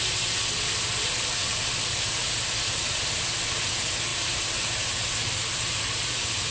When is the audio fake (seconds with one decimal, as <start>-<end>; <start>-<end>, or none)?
4.1-6.5